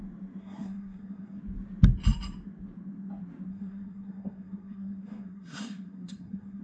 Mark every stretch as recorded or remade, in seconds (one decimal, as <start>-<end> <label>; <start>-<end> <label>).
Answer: 0.0-0.4 recorded; 0.4-1.4 remade; 1.4-3.5 recorded; 3.5-6.6 remade